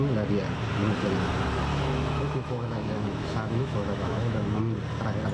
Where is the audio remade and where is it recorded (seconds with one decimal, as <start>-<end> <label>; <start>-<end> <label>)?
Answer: 0.0-1.7 recorded; 1.7-4.6 remade; 4.6-5.3 recorded